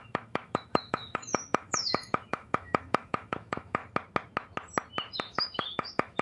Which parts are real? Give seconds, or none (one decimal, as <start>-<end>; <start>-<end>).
3.8-5.2

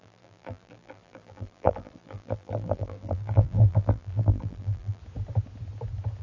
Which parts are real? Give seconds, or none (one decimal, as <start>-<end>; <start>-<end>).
5.0-6.2

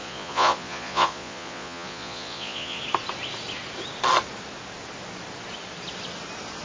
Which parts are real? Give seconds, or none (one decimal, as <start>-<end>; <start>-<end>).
2.8-6.6